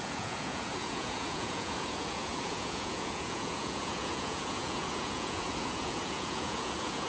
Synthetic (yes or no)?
yes